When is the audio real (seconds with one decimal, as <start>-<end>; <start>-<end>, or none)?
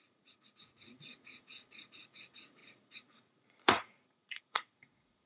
none